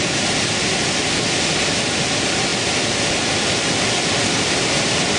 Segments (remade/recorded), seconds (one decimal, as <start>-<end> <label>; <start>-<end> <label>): 0.0-5.2 recorded

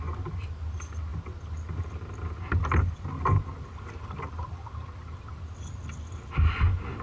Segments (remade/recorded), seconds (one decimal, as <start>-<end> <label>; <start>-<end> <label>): 0.0-7.0 recorded